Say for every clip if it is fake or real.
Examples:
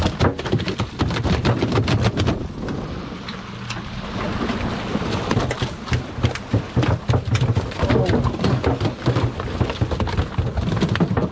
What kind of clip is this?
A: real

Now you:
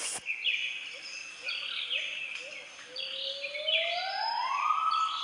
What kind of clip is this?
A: real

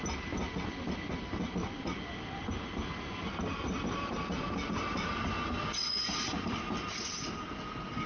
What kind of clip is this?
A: real